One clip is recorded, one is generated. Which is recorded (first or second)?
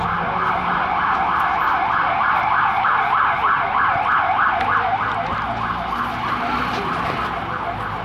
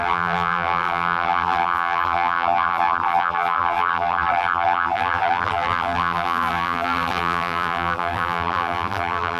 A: first